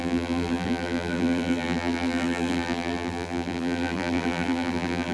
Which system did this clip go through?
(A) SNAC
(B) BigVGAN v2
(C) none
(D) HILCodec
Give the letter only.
B